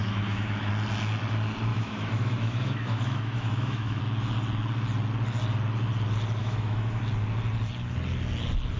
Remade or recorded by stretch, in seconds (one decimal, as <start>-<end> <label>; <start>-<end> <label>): 0.0-0.7 remade; 0.7-1.7 recorded; 1.7-4.0 remade; 4.0-6.4 recorded; 6.4-7.0 remade; 7.0-8.8 recorded